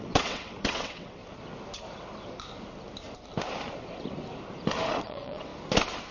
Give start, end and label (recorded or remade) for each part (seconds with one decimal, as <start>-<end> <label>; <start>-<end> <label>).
0.0-1.2 remade; 1.2-4.9 recorded; 4.9-5.5 remade; 5.5-6.1 recorded